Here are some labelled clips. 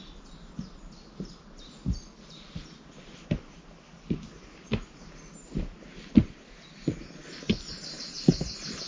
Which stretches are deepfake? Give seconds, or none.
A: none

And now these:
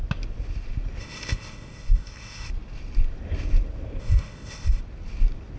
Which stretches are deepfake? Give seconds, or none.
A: 1.0-2.5 (codec, ZipCodec); 4.0-4.8

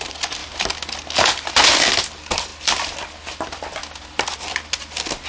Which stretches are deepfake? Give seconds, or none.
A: none

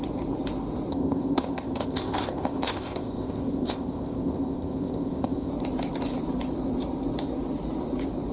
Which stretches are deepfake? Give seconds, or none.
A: 0.9-5.5 (codec, ZipCodec)

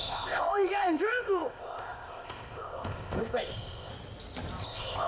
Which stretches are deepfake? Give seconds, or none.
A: 0.0-3.9 (codec, ZipCodec); 4.6-5.1

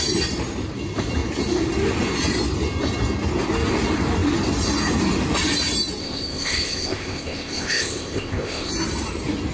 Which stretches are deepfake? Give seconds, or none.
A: 6.0-8.7 (codec, ZipCodec)

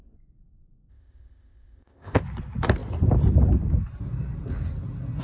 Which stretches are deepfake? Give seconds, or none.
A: 0.9-2.2 (codec, ZipCodec)